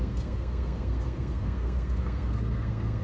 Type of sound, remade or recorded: remade